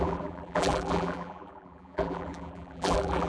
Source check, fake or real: fake